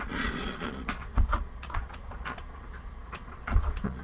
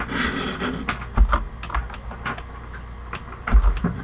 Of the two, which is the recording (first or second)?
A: second